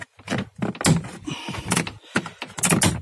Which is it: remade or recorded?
recorded